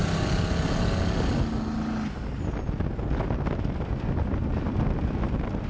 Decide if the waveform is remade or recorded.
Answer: recorded